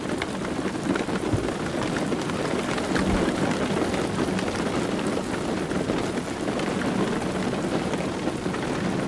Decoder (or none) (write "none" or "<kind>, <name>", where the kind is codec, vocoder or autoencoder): none